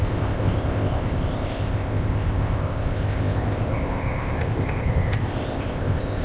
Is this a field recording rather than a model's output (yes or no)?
no